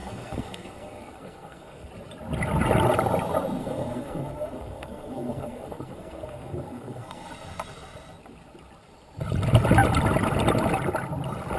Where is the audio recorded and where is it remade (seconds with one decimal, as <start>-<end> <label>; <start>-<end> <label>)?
0.0-1.9 remade; 1.9-3.6 recorded; 3.6-7.3 remade; 7.3-11.6 recorded